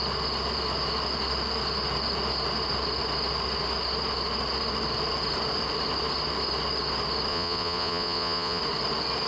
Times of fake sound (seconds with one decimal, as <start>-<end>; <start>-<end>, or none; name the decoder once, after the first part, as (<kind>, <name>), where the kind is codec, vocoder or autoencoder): 7.3-8.6 (vocoder, Vocos)